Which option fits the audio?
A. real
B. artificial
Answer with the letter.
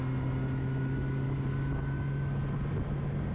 A